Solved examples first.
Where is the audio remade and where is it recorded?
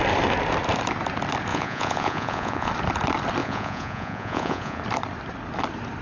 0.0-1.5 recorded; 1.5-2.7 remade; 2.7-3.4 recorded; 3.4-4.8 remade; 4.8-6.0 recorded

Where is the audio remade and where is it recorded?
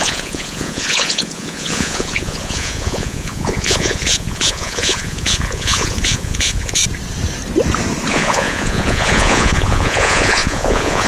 0.0-6.8 remade; 6.8-8.1 recorded; 8.1-11.1 remade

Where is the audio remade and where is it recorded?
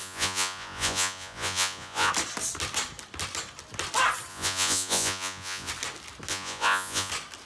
0.0-2.1 remade; 2.1-4.3 recorded; 4.3-5.7 remade; 5.7-6.3 recorded; 6.3-7.1 remade; 7.1-7.5 recorded